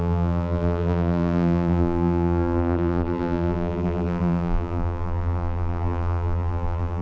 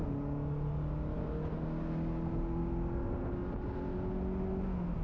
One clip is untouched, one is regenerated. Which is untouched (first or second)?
second